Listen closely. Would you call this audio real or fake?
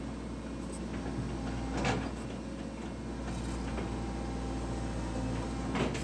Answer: real